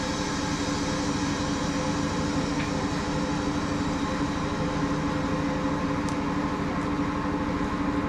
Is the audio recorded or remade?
recorded